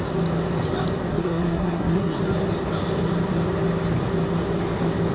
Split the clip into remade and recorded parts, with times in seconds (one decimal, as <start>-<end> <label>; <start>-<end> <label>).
0.0-1.1 recorded; 1.1-2.2 remade; 2.2-5.1 recorded

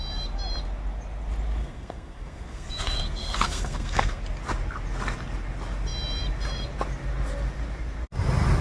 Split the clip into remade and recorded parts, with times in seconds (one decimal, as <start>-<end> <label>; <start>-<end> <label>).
0.0-1.6 recorded; 1.6-4.2 remade; 4.2-8.6 recorded